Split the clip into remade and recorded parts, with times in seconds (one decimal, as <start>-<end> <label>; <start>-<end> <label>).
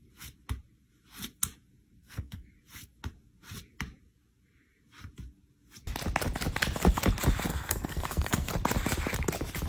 0.0-2.0 recorded; 2.0-2.5 remade; 2.5-7.5 recorded; 7.5-8.5 remade; 8.5-9.7 recorded